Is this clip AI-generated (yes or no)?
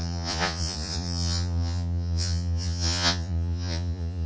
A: yes